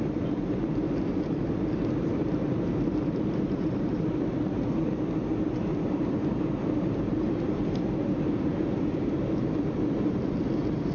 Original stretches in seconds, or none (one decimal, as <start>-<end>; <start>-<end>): 4.8-5.3